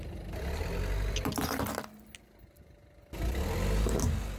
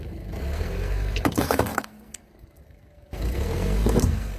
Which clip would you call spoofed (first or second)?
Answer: second